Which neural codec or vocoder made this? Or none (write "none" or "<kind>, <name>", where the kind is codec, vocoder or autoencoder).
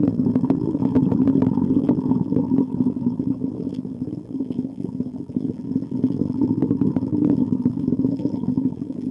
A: vocoder, BigVGAN v2